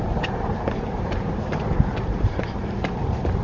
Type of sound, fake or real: fake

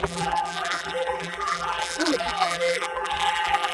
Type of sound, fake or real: fake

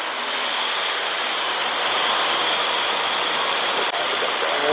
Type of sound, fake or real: fake